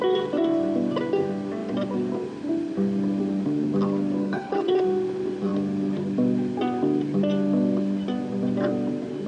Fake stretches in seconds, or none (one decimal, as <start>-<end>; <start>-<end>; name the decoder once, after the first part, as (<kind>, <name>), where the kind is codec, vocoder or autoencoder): 4.2-4.7 (codec, HILCodec)